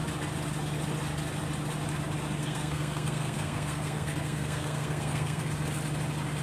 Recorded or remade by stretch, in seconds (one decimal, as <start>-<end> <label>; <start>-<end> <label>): 0.0-2.4 recorded; 2.4-5.5 remade; 5.5-6.4 recorded